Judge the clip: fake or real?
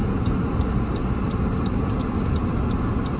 real